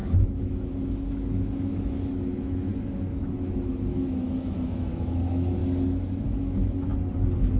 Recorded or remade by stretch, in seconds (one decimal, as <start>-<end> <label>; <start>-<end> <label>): 0.0-2.7 remade; 2.7-3.2 recorded; 3.2-5.6 remade; 5.6-6.2 recorded; 6.2-6.9 remade; 6.9-7.6 recorded